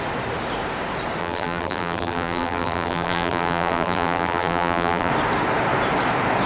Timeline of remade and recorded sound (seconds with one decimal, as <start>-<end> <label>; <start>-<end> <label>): 0.0-1.2 recorded; 1.2-5.1 remade; 5.1-6.5 recorded